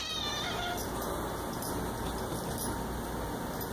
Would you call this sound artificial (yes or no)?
no